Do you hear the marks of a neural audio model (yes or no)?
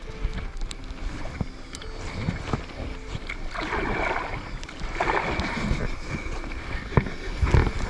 no